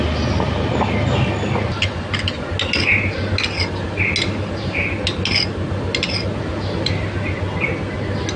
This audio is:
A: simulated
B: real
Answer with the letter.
B